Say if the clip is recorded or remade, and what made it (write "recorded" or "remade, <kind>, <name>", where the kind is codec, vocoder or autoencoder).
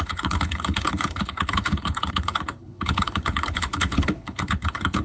remade, codec, HILCodec